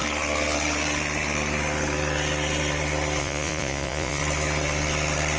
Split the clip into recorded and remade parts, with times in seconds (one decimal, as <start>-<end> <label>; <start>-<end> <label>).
0.0-3.2 recorded; 3.2-4.2 remade; 4.2-5.4 recorded